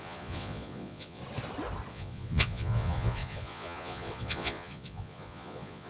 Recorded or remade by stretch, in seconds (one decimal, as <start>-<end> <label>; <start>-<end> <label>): 0.0-1.2 remade; 1.2-1.9 recorded; 1.9-5.9 remade